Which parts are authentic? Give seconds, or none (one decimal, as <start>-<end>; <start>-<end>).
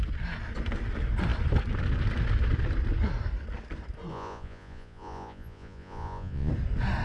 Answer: 0.0-4.1; 6.5-7.0